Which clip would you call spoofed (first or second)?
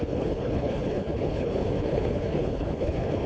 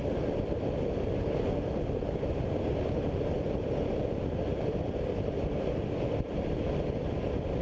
first